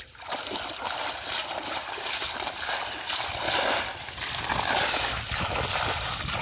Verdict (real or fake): real